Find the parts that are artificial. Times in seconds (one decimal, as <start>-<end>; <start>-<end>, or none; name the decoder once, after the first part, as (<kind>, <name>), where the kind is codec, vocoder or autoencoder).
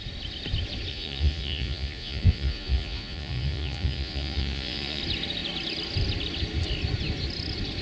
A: 0.9-5.0 (vocoder, Vocos)